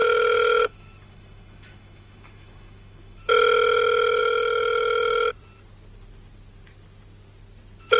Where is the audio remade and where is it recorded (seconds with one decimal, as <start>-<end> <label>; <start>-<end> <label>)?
0.0-3.3 remade; 3.3-4.2 recorded; 4.2-5.3 remade; 5.3-8.0 recorded